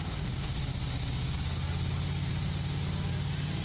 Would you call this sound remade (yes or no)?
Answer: no